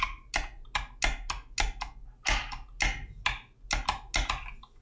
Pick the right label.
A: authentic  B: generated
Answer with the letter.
A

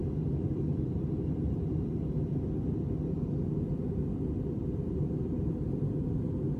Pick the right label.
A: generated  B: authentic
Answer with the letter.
B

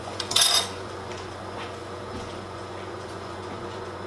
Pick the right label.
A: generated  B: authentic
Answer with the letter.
A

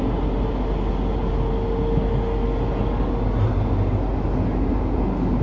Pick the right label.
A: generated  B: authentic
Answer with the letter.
B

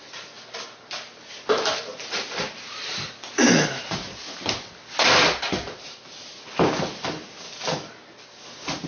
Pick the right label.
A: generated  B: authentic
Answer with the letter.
B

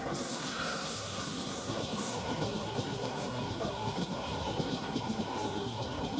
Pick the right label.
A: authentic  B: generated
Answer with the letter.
B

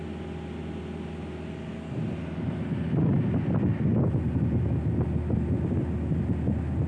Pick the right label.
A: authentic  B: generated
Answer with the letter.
A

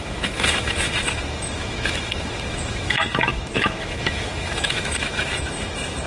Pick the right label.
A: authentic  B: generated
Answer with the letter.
B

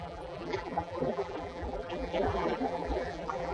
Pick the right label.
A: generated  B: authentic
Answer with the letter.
A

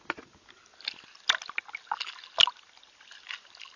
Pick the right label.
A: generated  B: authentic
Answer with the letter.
B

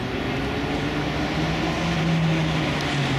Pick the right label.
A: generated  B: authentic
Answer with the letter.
B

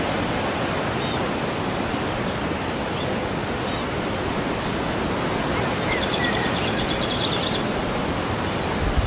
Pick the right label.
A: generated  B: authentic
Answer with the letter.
B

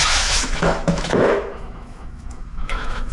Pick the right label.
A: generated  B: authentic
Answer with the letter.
A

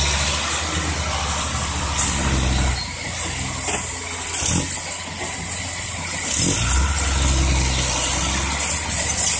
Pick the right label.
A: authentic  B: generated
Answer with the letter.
A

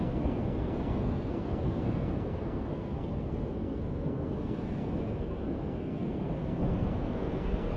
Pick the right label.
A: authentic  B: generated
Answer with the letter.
B